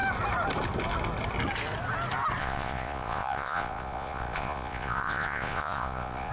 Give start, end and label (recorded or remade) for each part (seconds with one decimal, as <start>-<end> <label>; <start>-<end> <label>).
0.0-2.4 recorded; 2.4-6.3 remade